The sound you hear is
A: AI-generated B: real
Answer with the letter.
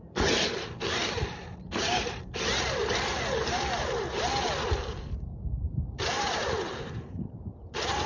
A